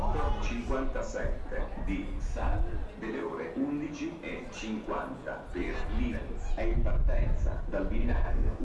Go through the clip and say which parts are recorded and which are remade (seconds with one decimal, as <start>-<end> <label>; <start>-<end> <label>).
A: 0.0-8.0 recorded; 8.0-8.6 remade